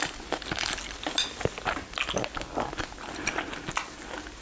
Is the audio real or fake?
real